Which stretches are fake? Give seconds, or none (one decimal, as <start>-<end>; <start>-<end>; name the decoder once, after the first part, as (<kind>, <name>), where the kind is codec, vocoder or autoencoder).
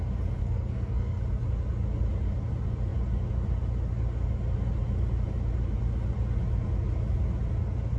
0.4-1.2 (codec, SNAC)